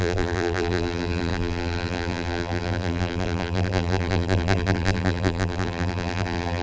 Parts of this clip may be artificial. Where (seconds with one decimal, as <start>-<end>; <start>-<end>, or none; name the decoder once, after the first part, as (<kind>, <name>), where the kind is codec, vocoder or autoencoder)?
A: 0.0-6.6 (vocoder, BigVGAN v2)